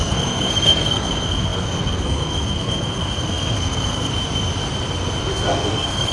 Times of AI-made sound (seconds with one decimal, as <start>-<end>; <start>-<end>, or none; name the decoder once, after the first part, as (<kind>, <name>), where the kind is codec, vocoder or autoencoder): 0.0-4.1 (codec, SNAC); 5.2-6.1

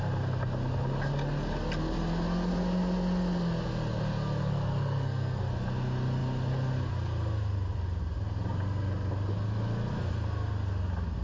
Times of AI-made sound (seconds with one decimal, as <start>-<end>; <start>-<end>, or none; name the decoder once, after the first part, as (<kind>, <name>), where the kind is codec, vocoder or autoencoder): 4.4-5.4 (codec, SNAC)

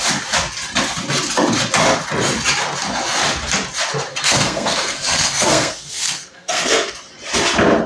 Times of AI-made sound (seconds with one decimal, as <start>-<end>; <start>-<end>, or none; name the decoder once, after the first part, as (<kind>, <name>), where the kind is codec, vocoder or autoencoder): 4.1-6.9 (codec, SNAC)

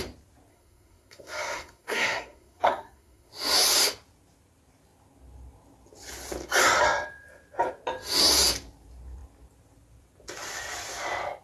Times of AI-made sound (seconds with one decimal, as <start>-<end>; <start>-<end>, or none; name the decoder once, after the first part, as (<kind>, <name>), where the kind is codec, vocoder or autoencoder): 0.5-3.3 (codec, SNAC)